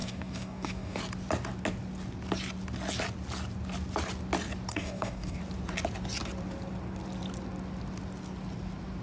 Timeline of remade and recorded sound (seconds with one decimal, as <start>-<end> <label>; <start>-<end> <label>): 0.0-1.0 remade; 1.0-4.7 recorded; 4.7-5.4 remade; 5.4-9.0 recorded